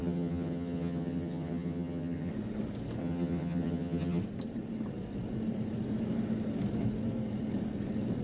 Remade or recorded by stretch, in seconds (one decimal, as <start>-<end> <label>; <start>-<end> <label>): 0.0-2.3 remade; 2.3-3.0 recorded; 3.0-4.2 remade; 4.2-8.2 recorded